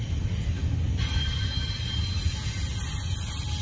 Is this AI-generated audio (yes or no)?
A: no